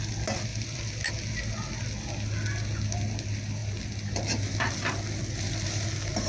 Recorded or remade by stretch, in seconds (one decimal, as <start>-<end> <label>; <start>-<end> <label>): 0.0-6.3 recorded